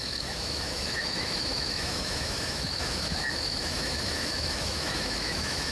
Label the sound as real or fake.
fake